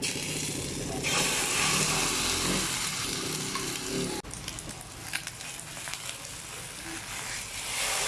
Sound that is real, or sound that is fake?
real